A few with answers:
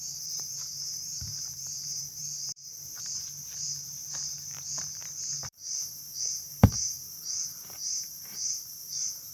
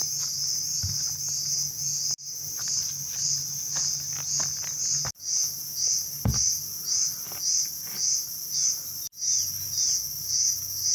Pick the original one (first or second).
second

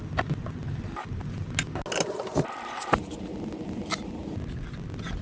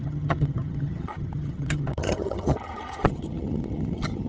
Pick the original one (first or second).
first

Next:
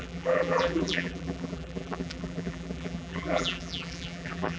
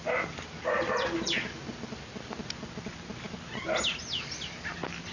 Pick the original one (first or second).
second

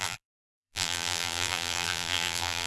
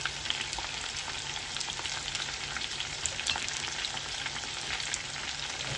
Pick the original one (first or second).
second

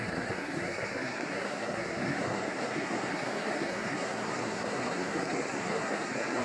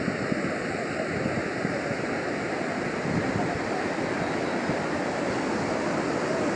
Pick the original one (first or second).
second